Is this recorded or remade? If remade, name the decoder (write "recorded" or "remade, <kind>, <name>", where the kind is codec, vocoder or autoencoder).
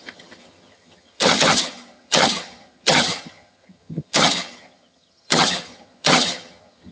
remade, vocoder, HiFi-GAN